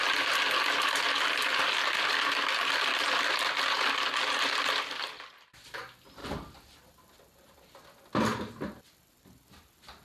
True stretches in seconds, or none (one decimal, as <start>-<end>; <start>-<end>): 0.0-10.0